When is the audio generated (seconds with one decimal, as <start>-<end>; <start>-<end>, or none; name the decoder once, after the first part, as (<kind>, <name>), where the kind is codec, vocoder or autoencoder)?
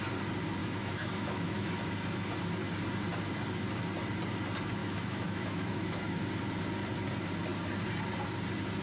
0.6-1.7 (autoencoder, DAC-VAE); 4.8-6.2